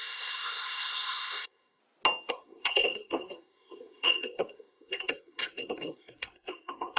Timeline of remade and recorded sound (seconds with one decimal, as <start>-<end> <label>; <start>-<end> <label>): 0.0-1.8 remade; 1.8-2.3 recorded; 2.3-7.0 remade

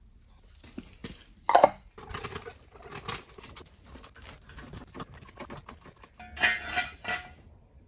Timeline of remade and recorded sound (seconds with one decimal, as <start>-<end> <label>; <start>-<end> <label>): 0.0-7.9 recorded

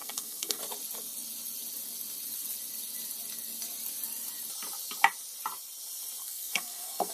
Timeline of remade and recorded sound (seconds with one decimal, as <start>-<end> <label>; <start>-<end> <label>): 0.0-0.6 remade; 0.6-6.2 recorded; 6.2-7.1 remade

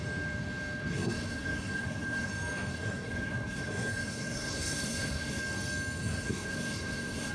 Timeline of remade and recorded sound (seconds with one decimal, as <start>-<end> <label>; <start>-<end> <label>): 0.0-0.9 recorded; 0.9-2.3 remade; 2.3-2.7 recorded; 2.7-5.4 remade; 5.4-6.0 recorded; 6.0-7.3 remade

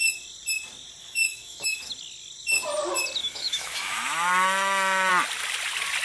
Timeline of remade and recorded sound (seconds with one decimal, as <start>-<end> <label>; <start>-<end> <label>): 0.0-1.0 recorded; 1.0-1.9 remade; 1.9-3.2 recorded; 3.2-5.1 remade; 5.1-6.0 recorded

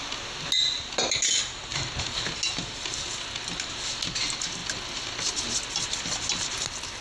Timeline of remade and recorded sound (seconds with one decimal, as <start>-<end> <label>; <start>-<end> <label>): 0.0-7.0 recorded

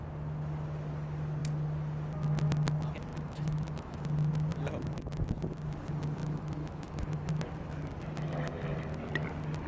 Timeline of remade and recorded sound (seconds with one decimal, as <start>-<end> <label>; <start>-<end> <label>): 0.0-3.1 recorded; 3.1-4.0 remade; 4.0-6.2 recorded; 6.2-7.3 remade; 7.3-9.7 recorded

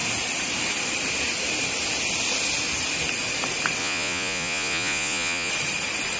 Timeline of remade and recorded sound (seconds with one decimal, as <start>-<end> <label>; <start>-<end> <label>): 0.0-3.8 recorded; 3.8-5.5 remade; 5.5-6.2 recorded